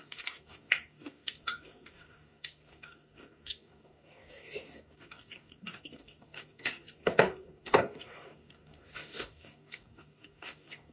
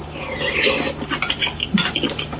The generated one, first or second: first